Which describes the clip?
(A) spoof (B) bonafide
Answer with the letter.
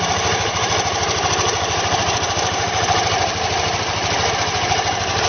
A